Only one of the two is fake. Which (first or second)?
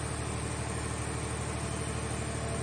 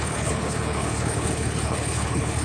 second